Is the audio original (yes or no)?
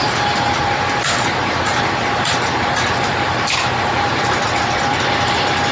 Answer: no